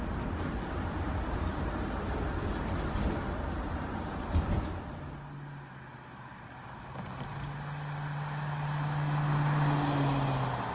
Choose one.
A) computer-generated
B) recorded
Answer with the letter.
B